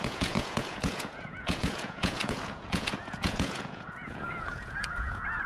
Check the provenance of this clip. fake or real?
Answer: fake